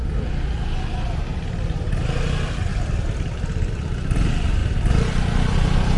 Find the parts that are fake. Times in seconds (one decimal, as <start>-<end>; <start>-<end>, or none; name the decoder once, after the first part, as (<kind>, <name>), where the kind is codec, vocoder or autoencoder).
1.3-2.0 (vocoder, BigVGAN v2); 2.7-3.7; 4.6-5.2